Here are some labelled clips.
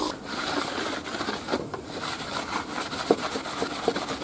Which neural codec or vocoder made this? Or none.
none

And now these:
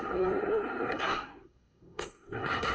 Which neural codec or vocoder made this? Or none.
codec, SNAC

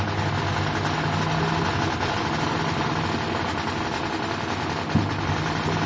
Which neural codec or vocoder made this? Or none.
none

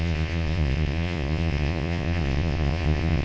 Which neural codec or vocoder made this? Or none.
vocoder, Vocos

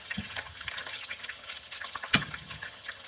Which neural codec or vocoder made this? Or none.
vocoder, HiFi-GAN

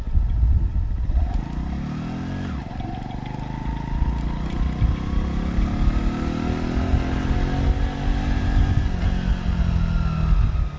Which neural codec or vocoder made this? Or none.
none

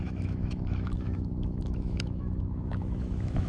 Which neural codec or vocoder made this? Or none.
autoencoder, DAC-VAE